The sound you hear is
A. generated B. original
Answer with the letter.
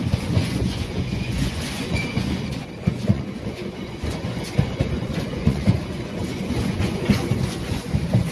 A